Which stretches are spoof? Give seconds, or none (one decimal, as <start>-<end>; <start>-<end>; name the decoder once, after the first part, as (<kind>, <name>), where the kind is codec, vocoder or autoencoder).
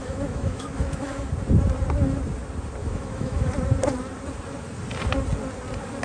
0.0-1.3 (autoencoder, DAC-VAE); 2.8-3.5